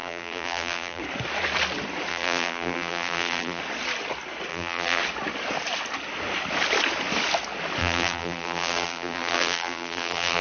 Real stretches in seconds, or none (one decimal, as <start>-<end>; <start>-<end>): 1.0-2.1; 3.6-4.5; 5.0-7.8